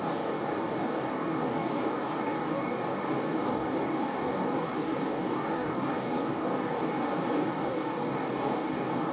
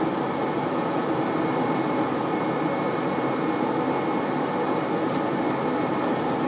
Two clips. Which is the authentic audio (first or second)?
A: second